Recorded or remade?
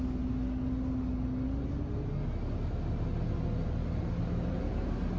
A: recorded